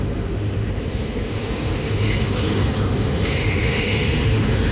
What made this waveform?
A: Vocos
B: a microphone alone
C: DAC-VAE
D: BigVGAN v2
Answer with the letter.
C